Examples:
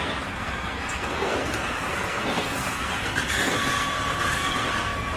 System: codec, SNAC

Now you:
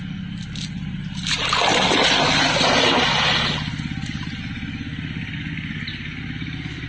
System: none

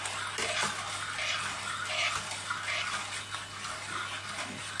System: none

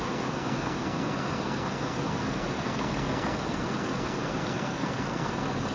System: codec, SNAC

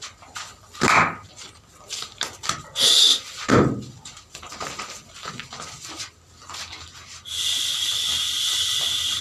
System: none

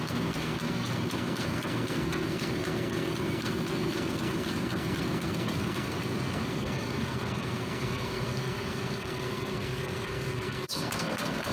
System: codec, SNAC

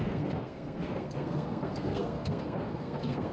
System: codec, SNAC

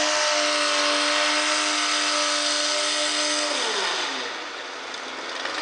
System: none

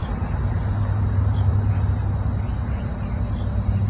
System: none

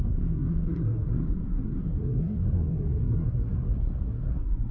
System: codec, SNAC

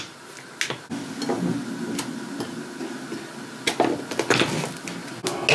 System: none